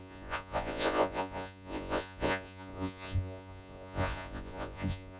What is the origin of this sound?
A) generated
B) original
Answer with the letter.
A